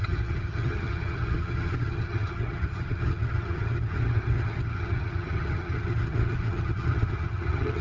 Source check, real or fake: fake